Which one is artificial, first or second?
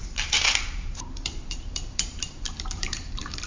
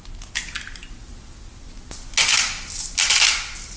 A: first